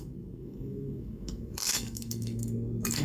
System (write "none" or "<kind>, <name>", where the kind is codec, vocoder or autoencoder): codec, SNAC